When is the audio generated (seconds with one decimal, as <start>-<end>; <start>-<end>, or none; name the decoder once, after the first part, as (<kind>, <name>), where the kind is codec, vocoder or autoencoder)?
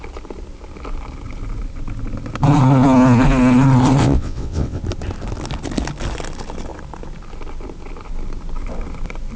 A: 4.0-4.8 (vocoder, WaveNeXt)